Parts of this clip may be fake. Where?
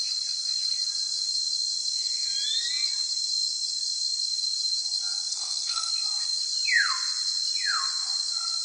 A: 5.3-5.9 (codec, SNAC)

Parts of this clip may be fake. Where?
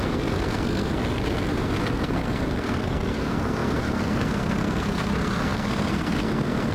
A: 0.0-6.7 (codec, SNAC)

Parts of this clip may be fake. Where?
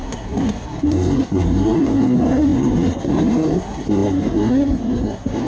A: 0.0-5.5 (codec, SNAC)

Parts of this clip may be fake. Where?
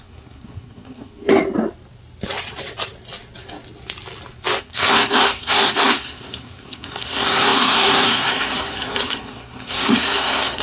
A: 0.0-1.3 (codec, SNAC); 4.6-10.6